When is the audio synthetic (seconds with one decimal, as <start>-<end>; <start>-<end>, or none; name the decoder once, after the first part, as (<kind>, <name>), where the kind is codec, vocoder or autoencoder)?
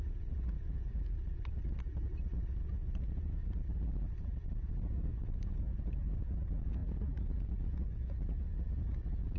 0.0-0.9 (vocoder, Vocos); 2.7-3.4; 4.7-9.4